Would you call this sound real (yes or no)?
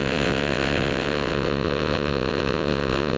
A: no